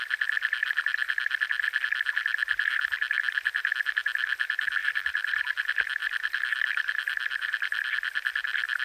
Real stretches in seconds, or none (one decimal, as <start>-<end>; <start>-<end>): 0.0-4.8; 5.4-6.0; 7.9-8.8